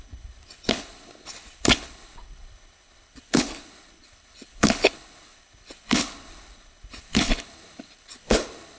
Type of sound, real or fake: fake